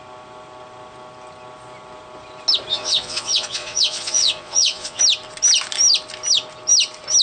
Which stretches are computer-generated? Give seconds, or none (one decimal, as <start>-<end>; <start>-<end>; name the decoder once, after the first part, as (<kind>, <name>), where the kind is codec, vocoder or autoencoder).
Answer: 2.7-5.0 (vocoder, Vocos)